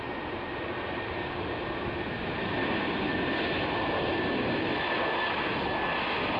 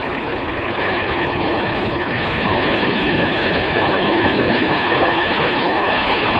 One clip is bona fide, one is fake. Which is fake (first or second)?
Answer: second